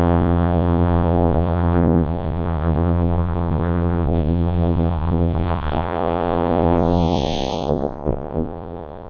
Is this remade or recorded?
remade